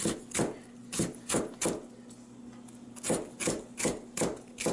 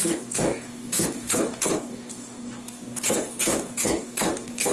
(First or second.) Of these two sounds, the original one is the first